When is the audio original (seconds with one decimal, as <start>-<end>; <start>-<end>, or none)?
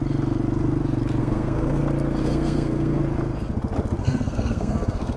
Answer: 0.0-1.2; 1.8-2.2; 3.0-4.0